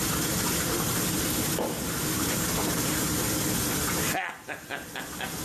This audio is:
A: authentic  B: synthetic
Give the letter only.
A